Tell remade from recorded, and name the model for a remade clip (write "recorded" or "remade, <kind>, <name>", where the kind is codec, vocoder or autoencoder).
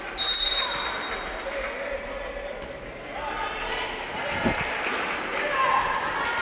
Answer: recorded